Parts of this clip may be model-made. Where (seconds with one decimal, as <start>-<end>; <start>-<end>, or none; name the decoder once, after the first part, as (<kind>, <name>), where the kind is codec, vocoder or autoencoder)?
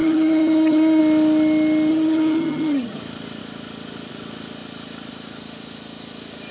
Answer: 0.0-1.0 (vocoder, HiFi-GAN); 1.9-3.0